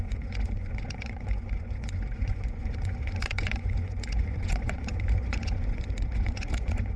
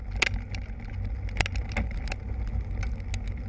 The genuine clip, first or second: second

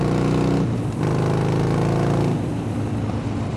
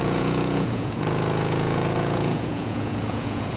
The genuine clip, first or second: first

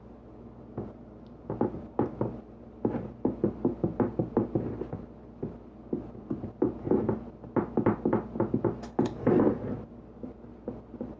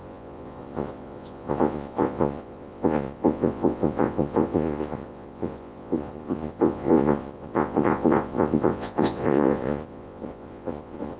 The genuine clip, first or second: first